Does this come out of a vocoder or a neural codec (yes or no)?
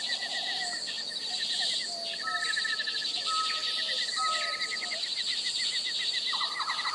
no